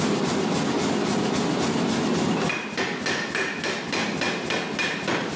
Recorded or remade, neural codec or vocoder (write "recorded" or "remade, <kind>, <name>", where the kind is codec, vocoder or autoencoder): recorded